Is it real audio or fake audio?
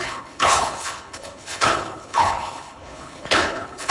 fake